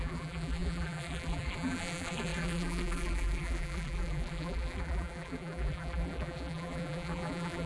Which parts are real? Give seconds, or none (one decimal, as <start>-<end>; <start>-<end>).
none